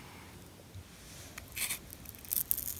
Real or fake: real